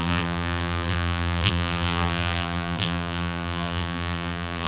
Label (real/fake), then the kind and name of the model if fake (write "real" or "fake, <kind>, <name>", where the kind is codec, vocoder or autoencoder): fake, vocoder, BigVGAN v2